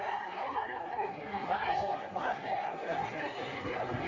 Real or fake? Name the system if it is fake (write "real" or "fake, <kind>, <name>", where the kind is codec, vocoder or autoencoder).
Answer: fake, codec, SNAC